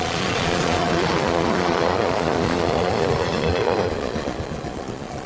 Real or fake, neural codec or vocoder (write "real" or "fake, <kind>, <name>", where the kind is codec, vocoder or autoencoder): fake, vocoder, Vocos